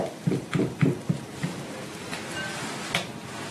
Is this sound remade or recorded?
recorded